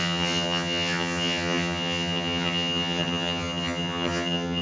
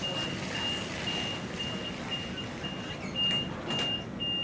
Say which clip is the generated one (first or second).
first